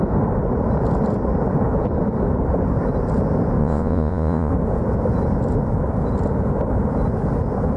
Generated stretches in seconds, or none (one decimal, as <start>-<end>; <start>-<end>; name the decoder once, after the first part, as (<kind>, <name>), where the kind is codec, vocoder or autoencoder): 3.6-4.5 (vocoder, Vocos)